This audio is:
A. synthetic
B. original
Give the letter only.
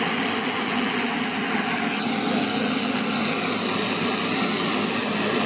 B